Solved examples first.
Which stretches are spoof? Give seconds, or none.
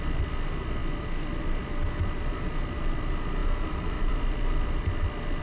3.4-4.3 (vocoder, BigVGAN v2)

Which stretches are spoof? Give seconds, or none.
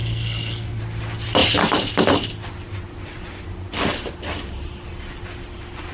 0.0-0.8 (codec, SNAC)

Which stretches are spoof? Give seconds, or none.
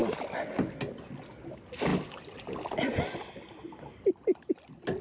none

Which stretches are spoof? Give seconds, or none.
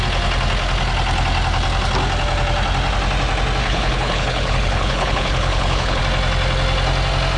3.6-6.0 (codec, HILCodec)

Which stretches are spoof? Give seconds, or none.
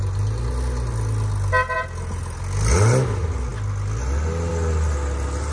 none